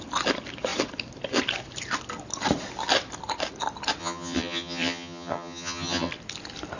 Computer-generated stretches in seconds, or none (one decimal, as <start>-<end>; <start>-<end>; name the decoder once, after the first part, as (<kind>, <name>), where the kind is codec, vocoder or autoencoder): 4.0-6.1 (vocoder, HiFi-GAN)